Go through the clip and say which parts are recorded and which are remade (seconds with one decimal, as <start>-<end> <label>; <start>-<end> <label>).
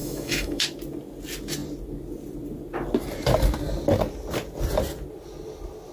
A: 0.0-0.6 remade; 0.6-5.9 recorded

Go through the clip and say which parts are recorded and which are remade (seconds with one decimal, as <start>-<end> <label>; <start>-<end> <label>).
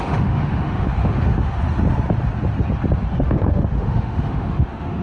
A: 0.0-1.6 remade; 1.6-3.1 recorded; 3.1-5.0 remade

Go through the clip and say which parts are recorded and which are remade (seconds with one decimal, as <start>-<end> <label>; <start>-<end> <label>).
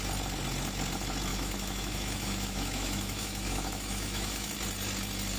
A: 0.0-1.3 recorded; 1.3-4.5 remade; 4.5-5.4 recorded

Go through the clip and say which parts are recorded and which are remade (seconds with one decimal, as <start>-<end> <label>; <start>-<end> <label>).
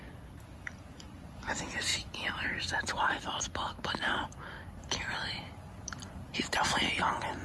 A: 0.0-7.4 recorded